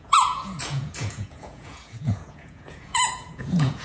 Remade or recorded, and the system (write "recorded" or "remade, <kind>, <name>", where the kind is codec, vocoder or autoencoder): remade, vocoder, Vocos